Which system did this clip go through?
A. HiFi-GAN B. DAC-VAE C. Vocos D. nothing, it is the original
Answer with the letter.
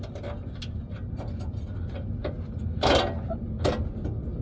D